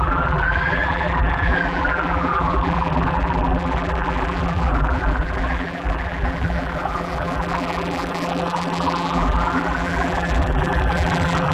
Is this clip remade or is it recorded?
remade